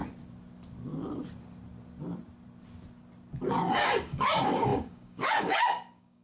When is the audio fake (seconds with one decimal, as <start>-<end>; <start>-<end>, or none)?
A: 3.7-6.2